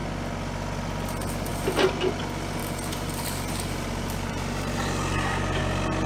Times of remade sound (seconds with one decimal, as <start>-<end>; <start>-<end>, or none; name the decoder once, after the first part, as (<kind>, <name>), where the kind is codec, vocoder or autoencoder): 2.6-5.6 (vocoder, BigVGAN v2)